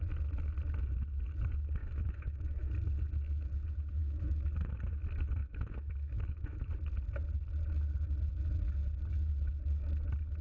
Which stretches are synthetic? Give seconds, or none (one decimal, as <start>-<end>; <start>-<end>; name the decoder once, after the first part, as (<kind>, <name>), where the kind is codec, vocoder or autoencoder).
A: 1.8-2.7 (autoencoder, DAC-VAE); 4.0-4.7; 5.4-6.7